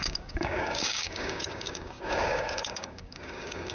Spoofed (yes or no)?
yes